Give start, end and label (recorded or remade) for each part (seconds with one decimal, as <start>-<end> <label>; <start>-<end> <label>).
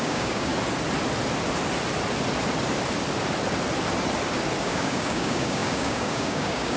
0.0-0.5 remade; 0.5-4.6 recorded; 4.6-6.8 remade